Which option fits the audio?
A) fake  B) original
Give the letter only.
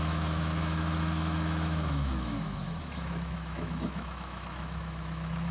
A